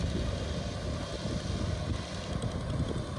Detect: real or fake real